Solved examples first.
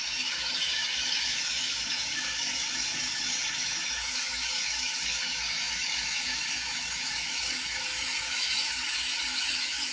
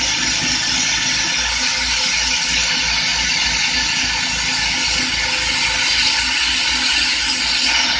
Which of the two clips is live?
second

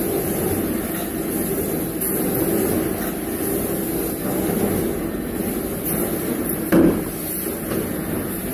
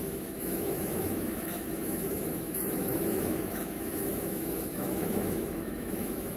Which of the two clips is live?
first